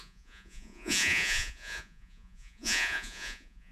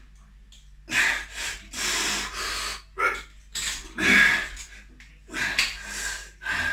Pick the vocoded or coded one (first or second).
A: first